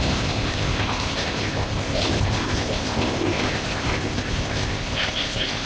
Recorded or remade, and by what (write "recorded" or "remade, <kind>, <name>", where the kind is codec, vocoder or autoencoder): remade, codec, ZipCodec